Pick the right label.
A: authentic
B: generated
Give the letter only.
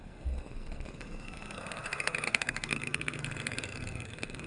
B